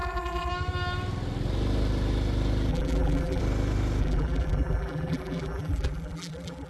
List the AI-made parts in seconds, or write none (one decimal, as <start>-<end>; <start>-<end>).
0.0-0.5; 2.7-3.4; 4.0-6.7